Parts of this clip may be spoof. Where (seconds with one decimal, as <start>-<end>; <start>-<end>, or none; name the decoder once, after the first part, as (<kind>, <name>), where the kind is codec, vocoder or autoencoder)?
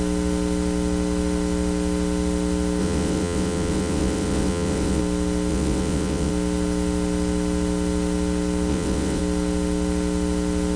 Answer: 2.8-5.0 (vocoder, WaveNeXt); 5.5-6.3; 8.7-9.2